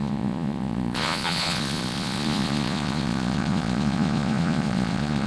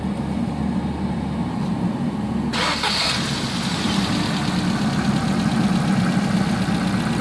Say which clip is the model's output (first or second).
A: first